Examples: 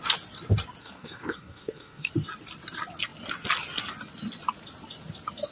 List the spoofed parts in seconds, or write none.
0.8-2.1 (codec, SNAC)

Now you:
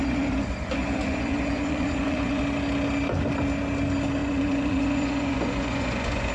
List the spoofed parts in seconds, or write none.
0.0-2.4 (vocoder, Vocos); 4.2-6.3

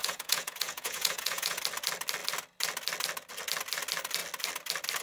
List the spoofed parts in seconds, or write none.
0.0-1.6 (vocoder, Vocos)